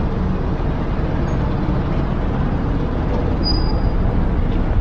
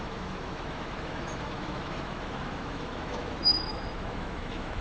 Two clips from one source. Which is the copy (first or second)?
second